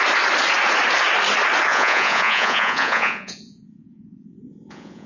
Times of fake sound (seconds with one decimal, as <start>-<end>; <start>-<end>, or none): 1.7-5.1